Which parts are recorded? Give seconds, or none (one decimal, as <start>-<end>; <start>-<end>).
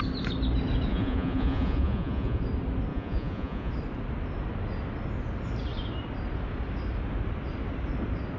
0.0-0.9; 2.4-2.9; 3.7-8.4